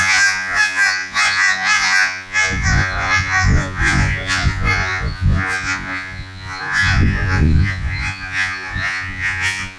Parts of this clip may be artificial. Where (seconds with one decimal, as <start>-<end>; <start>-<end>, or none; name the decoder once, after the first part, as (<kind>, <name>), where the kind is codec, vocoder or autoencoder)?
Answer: 0.0-9.8 (vocoder, Vocos)